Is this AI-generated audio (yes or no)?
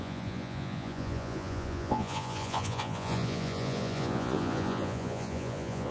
yes